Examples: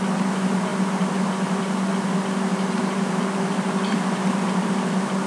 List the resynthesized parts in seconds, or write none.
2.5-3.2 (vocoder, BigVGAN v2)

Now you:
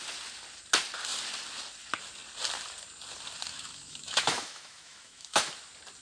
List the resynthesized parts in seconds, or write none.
3.5-5.5 (autoencoder, DAC-VAE)

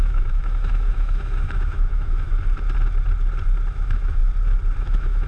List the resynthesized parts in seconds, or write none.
0.0-2.3 (autoencoder, DAC-VAE); 3.7-4.2; 4.8-5.3